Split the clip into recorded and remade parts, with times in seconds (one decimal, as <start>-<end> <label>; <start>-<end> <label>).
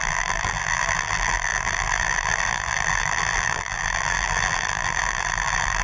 0.0-5.8 remade